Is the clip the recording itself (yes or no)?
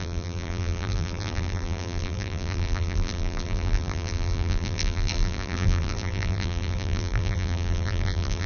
no